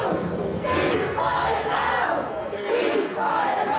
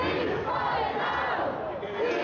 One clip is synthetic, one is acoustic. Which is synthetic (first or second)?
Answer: first